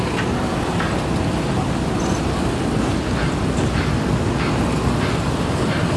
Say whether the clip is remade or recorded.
recorded